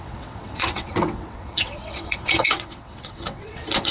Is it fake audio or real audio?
fake